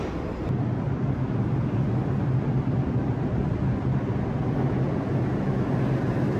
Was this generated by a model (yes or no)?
no